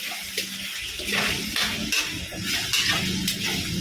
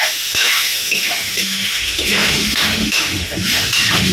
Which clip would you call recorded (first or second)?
first